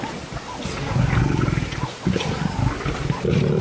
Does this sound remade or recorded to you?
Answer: recorded